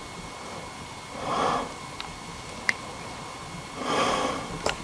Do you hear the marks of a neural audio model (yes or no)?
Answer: no